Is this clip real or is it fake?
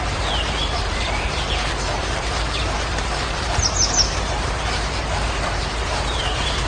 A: fake